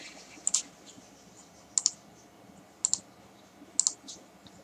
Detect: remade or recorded recorded